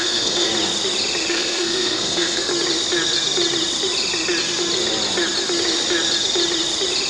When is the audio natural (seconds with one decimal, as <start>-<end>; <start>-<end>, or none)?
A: 0.5-1.3; 2.5-7.1